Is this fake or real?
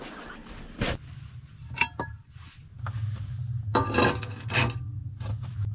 real